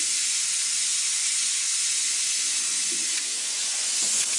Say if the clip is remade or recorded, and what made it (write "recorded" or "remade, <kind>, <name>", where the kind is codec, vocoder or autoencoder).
remade, vocoder, Vocos